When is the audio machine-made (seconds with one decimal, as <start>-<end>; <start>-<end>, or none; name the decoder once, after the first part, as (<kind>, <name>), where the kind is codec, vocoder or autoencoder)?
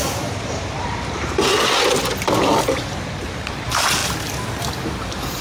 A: 0.0-1.5 (vocoder, BigVGAN v2); 3.5-4.0; 4.6-5.4